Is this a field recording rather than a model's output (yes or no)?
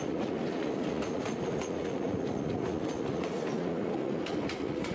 no